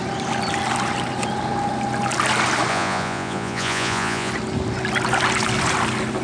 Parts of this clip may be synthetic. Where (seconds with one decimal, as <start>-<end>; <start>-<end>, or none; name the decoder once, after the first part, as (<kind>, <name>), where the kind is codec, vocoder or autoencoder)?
2.7-4.3 (vocoder, Vocos)